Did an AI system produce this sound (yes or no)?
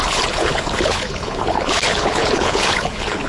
yes